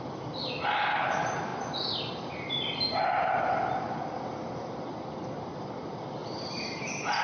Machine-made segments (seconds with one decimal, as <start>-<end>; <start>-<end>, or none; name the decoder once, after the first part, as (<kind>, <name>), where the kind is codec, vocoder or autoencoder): 0.0-1.5 (vocoder, BigVGAN v2); 5.6-7.2